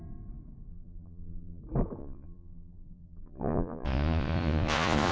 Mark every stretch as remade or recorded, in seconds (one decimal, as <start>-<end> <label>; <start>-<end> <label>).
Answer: 0.0-0.7 recorded; 0.7-1.6 remade; 1.6-2.0 recorded; 2.0-5.1 remade